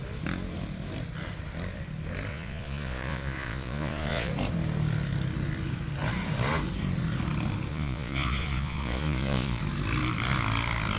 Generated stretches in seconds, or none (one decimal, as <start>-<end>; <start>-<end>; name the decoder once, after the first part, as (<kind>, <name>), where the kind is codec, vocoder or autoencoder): 2.3-4.3 (vocoder, Vocos); 7.7-9.6